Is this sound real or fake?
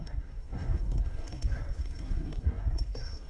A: fake